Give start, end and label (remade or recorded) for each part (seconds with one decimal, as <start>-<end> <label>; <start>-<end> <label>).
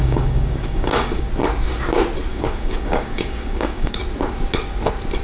0.0-1.3 remade; 1.3-2.3 recorded; 2.3-4.0 remade; 4.0-5.2 recorded